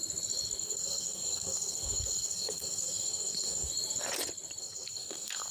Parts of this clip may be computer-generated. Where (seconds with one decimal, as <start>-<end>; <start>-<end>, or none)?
0.6-3.7; 4.6-5.5